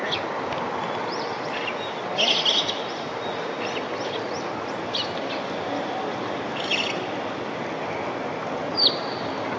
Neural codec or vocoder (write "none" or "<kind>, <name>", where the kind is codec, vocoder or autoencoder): none